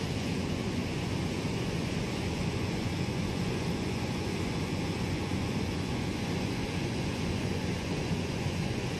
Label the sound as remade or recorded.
remade